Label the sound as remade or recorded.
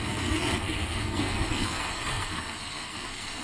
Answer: remade